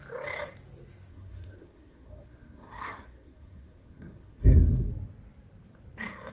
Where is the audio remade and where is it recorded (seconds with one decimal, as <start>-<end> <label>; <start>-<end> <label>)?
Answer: 0.0-1.1 recorded; 1.1-4.9 remade; 4.9-6.3 recorded